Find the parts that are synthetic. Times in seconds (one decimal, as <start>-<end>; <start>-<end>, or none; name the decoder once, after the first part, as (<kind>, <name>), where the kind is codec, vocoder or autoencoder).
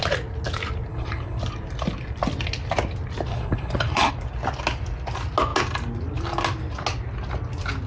0.9-1.4 (codec, HILCodec); 3.3-4.1